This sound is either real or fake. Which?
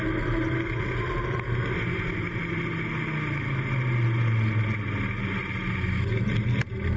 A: real